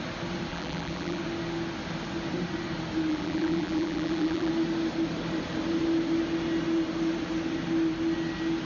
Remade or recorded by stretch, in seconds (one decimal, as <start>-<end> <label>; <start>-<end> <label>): 0.0-0.5 recorded; 0.5-1.2 remade; 1.2-3.1 recorded; 3.1-4.5 remade; 4.5-8.7 recorded